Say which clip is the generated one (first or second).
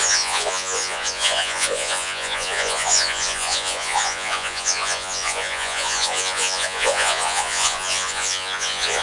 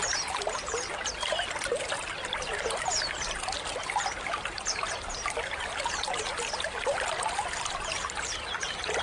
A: first